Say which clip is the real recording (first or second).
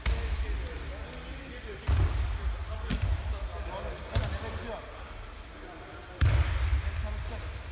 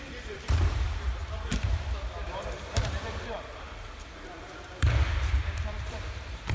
first